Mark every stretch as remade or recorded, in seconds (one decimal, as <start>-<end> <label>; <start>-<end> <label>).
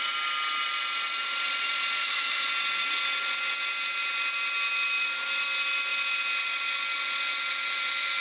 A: 0.0-2.0 recorded; 2.0-2.5 remade; 2.5-8.2 recorded